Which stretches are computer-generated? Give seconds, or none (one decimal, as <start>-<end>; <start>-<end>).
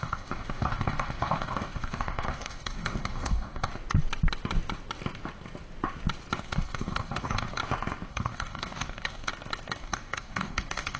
0.0-3.7; 6.4-7.6; 8.1-9.3; 9.8-11.0